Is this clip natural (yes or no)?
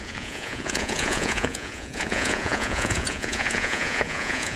no